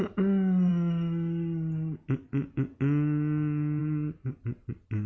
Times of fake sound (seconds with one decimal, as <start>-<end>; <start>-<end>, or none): none